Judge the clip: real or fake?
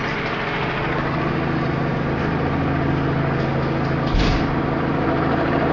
real